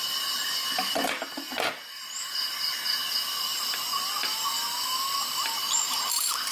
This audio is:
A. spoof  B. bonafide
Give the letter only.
B